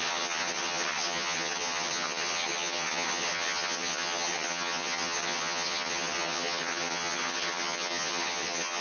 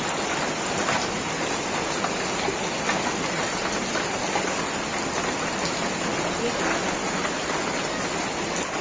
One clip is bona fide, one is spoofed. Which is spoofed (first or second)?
first